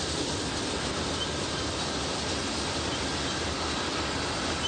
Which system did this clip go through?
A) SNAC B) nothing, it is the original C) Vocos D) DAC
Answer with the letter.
B